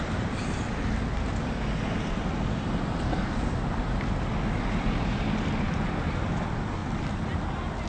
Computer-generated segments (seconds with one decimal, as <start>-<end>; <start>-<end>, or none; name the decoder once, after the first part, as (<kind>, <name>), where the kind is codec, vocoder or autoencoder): none